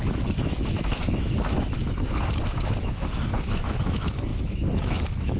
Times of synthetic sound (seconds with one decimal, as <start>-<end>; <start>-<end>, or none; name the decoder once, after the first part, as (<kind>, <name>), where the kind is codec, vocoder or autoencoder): 0.0-5.4 (autoencoder, DAC-VAE)